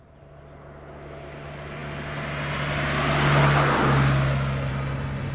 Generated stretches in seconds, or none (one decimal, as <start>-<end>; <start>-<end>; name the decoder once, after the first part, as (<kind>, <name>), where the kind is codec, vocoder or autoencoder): none